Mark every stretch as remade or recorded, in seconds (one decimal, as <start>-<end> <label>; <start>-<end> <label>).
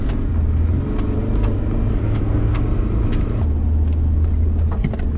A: 0.0-1.9 recorded; 1.9-2.6 remade; 2.6-5.2 recorded